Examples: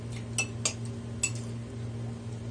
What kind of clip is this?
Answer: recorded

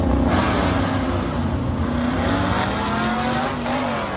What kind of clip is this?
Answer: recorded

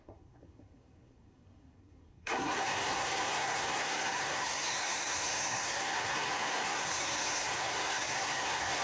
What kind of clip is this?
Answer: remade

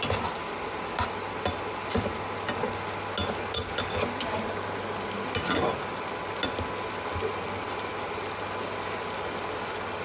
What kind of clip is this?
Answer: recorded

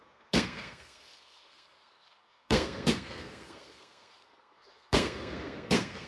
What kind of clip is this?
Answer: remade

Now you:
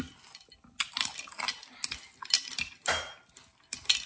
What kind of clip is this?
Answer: recorded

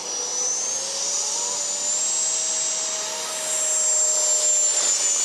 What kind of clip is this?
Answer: recorded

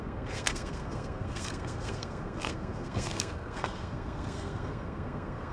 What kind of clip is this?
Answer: remade